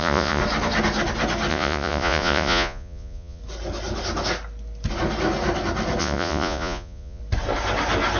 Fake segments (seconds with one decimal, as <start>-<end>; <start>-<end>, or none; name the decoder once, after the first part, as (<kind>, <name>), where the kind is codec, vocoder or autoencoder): 0.0-0.4 (vocoder, Vocos); 1.5-3.4; 6.0-7.2